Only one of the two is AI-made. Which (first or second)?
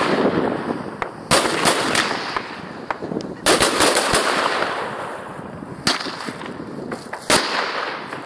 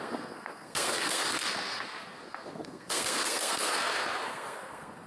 second